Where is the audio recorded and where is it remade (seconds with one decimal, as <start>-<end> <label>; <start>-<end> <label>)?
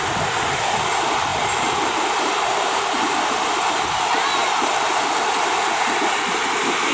0.0-4.4 recorded; 4.4-5.6 remade; 5.6-6.9 recorded